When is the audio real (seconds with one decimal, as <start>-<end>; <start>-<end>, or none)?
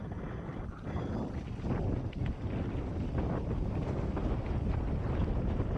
1.4-2.9; 5.3-5.8